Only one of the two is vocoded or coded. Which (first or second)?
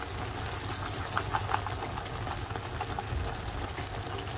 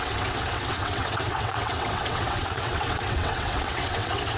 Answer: second